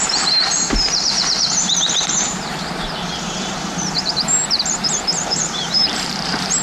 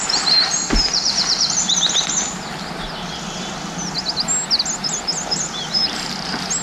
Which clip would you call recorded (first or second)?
second